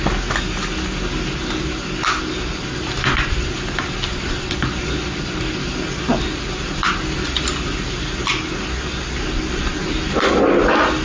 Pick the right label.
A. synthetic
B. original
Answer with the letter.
B